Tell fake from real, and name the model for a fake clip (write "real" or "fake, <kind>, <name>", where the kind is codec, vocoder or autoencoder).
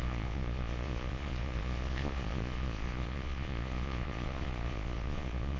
fake, vocoder, Vocos